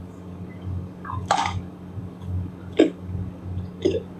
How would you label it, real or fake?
fake